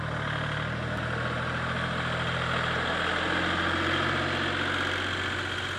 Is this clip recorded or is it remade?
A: recorded